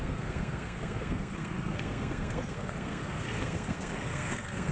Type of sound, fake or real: fake